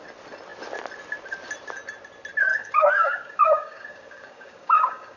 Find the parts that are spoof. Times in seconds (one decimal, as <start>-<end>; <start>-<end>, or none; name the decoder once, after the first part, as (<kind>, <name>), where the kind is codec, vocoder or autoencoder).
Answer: 2.5-5.2 (codec, DAC)